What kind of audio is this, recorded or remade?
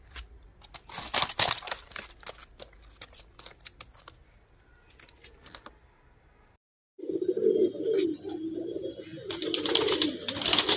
recorded